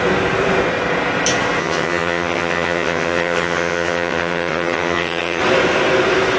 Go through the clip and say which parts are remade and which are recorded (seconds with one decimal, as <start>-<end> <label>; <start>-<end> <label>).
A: 0.0-1.6 recorded; 1.6-5.4 remade; 5.4-6.4 recorded